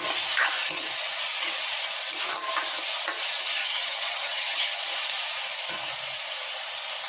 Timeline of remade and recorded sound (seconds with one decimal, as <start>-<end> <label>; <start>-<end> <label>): 0.0-3.6 recorded; 3.6-4.8 remade; 4.8-7.1 recorded